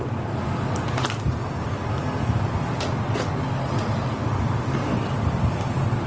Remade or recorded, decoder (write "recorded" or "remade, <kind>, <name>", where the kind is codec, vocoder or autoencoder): recorded